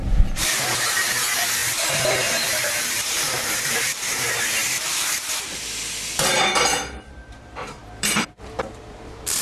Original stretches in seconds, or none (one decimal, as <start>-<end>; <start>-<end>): none